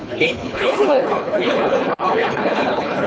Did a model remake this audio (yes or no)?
yes